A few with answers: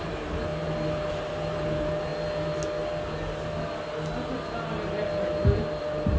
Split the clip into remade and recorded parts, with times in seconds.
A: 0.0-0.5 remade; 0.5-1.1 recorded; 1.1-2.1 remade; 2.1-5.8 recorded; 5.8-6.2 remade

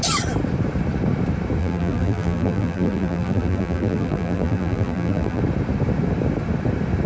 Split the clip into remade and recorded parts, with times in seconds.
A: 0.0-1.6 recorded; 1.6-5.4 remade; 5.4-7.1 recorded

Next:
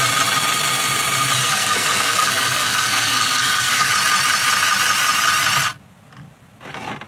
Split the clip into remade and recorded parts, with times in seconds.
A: 0.0-1.4 recorded; 1.4-3.9 remade; 3.9-7.1 recorded

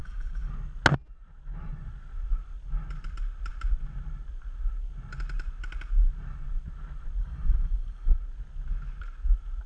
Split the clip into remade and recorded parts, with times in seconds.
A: 0.0-0.5 remade; 0.5-7.2 recorded; 7.2-8.2 remade; 8.2-9.7 recorded

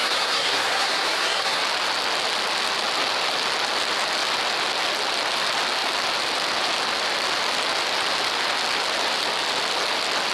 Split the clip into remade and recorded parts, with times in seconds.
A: 0.0-1.6 remade; 1.6-10.3 recorded

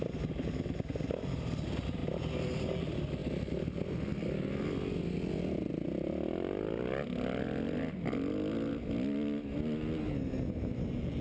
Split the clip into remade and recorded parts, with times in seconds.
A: 0.0-11.2 recorded

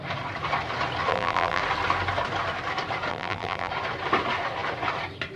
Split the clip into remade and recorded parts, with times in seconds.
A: 0.0-1.1 recorded; 1.1-1.6 remade; 1.6-3.1 recorded; 3.1-3.7 remade; 3.7-5.4 recorded